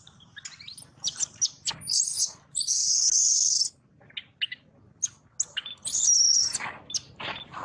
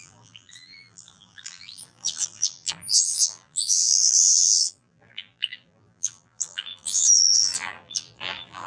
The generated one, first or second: second